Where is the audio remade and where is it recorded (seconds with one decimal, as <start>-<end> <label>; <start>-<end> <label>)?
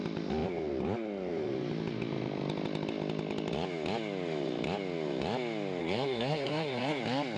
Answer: 0.0-5.8 recorded; 5.8-7.0 remade; 7.0-7.4 recorded